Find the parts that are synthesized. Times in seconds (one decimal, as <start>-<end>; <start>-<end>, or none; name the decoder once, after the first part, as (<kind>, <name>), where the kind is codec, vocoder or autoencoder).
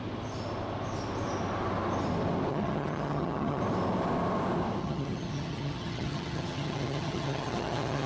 2.5-3.6 (vocoder, HiFi-GAN); 4.8-8.1